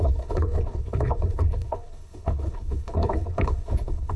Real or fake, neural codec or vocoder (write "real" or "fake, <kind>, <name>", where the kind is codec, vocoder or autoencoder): fake, codec, HILCodec